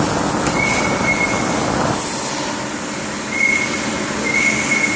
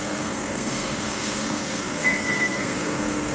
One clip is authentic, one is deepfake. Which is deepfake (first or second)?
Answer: second